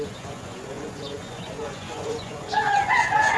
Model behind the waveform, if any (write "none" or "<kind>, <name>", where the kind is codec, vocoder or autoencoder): vocoder, Vocos